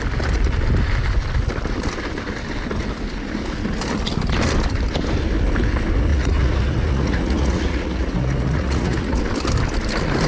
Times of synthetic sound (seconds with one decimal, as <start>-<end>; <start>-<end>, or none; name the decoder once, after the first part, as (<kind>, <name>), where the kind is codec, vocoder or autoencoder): 6.1-9.2 (vocoder, Vocos)